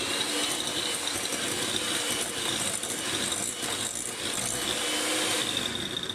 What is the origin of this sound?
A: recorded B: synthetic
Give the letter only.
A